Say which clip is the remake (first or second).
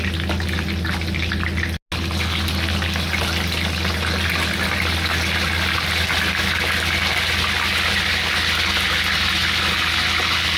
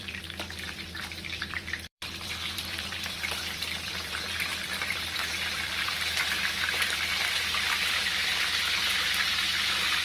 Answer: second